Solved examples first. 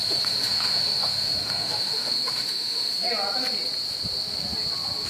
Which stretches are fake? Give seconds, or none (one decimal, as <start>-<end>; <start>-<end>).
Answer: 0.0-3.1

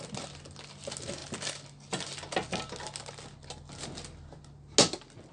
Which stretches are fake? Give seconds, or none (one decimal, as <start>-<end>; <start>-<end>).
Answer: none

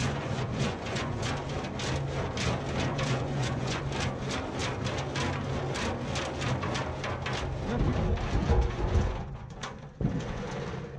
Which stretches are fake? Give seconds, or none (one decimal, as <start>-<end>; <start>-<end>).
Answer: 0.0-1.3; 2.9-3.8; 8.4-10.5

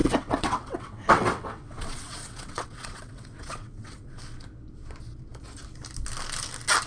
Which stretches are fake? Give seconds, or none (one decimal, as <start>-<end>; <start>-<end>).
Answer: 0.0-4.1